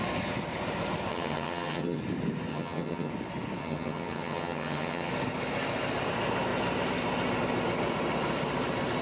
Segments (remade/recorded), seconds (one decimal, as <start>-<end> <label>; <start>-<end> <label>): 0.0-1.1 recorded; 1.1-2.0 remade; 2.0-2.5 recorded; 2.5-3.1 remade; 3.1-3.6 recorded; 3.6-5.1 remade; 5.1-9.0 recorded

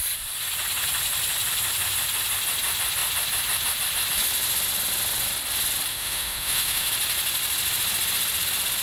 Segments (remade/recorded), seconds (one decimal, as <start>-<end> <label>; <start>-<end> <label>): 0.0-5.9 recorded; 5.9-6.9 remade; 6.9-8.8 recorded

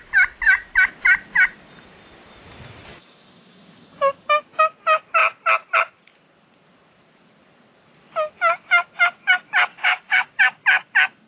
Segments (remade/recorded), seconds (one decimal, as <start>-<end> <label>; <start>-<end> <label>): 0.0-2.9 recorded; 2.9-4.6 remade; 4.6-9.7 recorded; 9.7-10.4 remade; 10.4-11.3 recorded

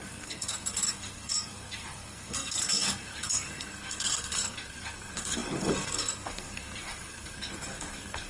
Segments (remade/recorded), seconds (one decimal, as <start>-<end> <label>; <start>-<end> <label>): 0.0-8.3 remade

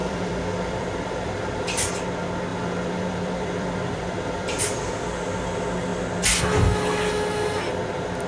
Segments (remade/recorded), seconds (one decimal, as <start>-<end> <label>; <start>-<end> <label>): 0.0-1.9 remade; 1.9-2.5 recorded; 2.5-4.9 remade; 4.9-8.3 recorded